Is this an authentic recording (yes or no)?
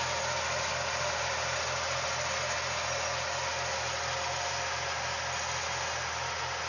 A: yes